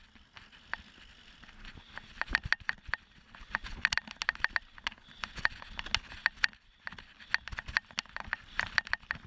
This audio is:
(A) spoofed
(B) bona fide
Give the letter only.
B